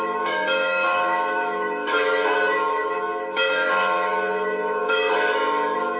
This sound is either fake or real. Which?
fake